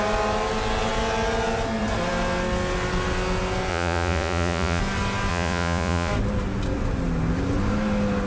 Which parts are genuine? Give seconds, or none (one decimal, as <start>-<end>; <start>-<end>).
0.0-3.7; 4.8-5.3; 6.1-8.3